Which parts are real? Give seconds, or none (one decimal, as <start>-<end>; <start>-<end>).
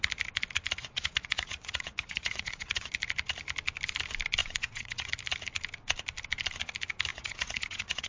0.0-0.8; 2.9-4.4; 5.1-7.1